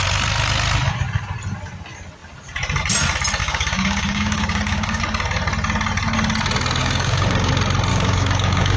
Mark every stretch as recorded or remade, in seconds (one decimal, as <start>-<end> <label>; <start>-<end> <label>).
0.0-3.4 recorded; 3.4-5.0 remade; 5.0-6.8 recorded; 6.8-7.5 remade; 7.5-7.9 recorded; 7.9-8.8 remade